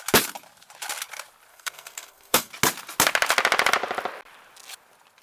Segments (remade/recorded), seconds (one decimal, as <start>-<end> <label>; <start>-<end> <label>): 0.0-1.5 recorded; 1.5-2.5 remade; 2.5-5.2 recorded